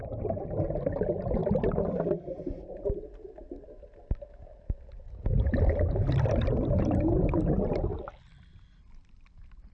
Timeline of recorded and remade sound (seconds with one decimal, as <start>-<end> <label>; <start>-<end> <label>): 0.0-1.4 recorded; 1.4-6.5 remade; 6.5-7.9 recorded; 7.9-8.8 remade; 8.8-9.7 recorded